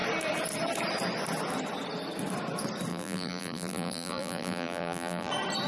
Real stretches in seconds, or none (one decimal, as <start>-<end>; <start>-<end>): 0.0-2.9; 5.3-5.7